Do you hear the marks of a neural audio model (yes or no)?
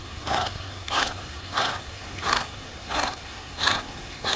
yes